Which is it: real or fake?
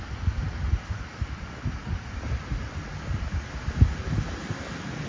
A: real